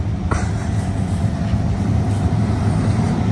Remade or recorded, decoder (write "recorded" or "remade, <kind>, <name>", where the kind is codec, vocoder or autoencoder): recorded